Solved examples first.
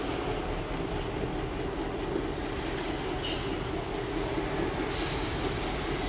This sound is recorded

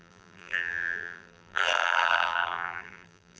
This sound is remade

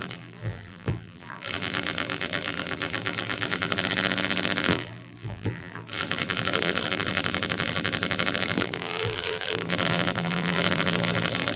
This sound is remade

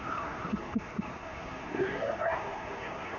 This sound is remade